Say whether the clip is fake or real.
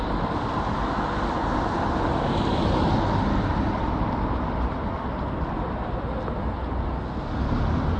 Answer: real